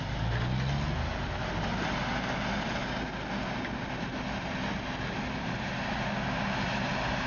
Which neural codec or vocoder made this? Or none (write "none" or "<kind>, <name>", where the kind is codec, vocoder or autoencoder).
none